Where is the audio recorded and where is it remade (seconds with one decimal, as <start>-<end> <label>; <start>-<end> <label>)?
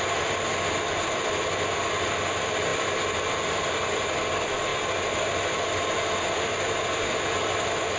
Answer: 0.0-8.0 recorded